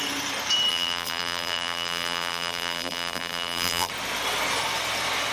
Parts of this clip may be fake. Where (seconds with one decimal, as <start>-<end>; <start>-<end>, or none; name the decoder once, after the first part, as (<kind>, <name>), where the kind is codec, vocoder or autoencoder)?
0.7-3.9 (vocoder, BigVGAN v2)